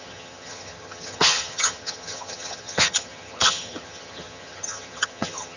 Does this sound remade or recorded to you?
remade